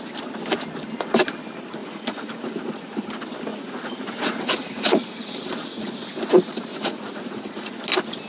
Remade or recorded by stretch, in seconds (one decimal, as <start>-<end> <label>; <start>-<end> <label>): 0.0-1.8 recorded; 1.8-3.1 remade; 3.1-3.5 recorded; 3.5-6.0 remade; 6.0-6.7 recorded; 6.7-7.8 remade; 7.8-8.3 recorded